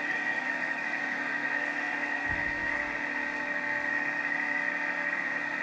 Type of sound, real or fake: fake